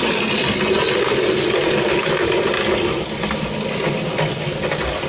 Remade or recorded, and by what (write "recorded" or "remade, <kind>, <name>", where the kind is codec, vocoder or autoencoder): recorded